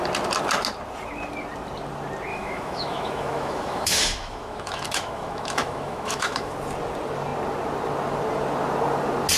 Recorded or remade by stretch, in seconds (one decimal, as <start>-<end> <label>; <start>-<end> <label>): 0.0-2.3 recorded; 2.3-6.5 remade; 6.5-9.4 recorded

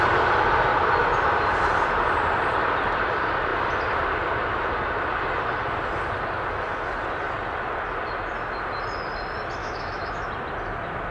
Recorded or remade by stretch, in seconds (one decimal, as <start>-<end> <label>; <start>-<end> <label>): 0.0-9.6 recorded; 9.6-10.3 remade; 10.3-11.1 recorded

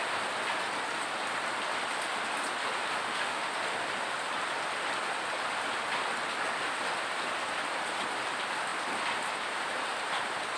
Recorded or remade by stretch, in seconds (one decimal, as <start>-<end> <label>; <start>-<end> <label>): 0.0-3.0 recorded; 3.0-3.5 remade; 3.5-10.6 recorded